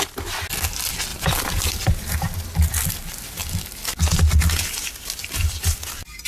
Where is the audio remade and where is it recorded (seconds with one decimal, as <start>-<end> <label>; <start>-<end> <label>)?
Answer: 0.0-1.1 recorded; 1.1-1.9 remade; 1.9-5.2 recorded; 5.2-5.8 remade; 5.8-6.3 recorded